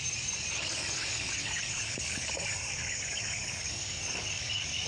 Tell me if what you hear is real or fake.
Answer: fake